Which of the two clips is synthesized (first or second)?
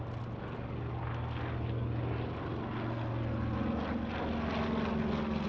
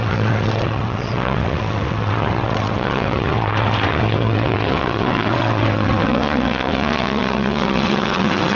second